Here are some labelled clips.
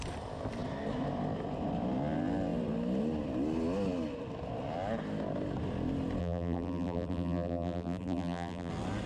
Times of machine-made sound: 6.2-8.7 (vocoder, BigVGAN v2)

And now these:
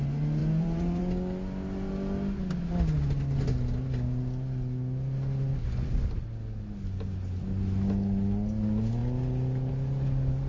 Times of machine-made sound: 0.4-1.0 (vocoder, BigVGAN v2)

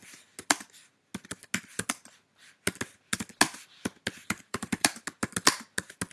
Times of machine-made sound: 4.2-4.9 (vocoder, BigVGAN v2)

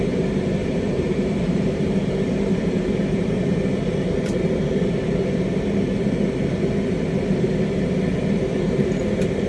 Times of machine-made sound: 0.6-5.7 (vocoder, BigVGAN v2); 8.5-9.5

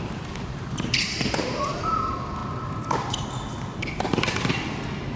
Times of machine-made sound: 0.0-2.4 (vocoder, BigVGAN v2)

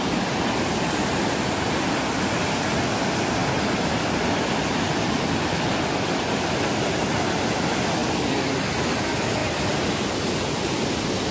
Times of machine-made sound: 3.4-6.5 (vocoder, BigVGAN v2); 9.4-9.9

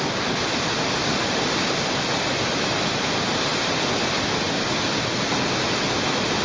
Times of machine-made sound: none